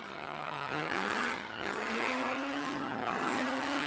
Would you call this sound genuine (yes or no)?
no